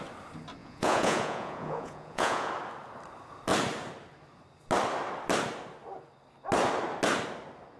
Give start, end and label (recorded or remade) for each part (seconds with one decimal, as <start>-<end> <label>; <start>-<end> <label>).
0.0-0.6 recorded; 0.6-2.5 remade; 2.5-7.8 recorded